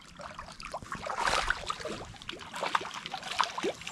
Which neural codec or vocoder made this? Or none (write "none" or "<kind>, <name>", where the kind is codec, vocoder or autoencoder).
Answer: none